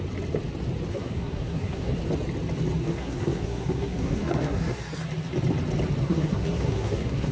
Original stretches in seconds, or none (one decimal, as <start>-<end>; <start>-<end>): 0.0-0.9; 2.0-2.8; 4.9-6.0